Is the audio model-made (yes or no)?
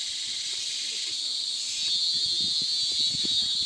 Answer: no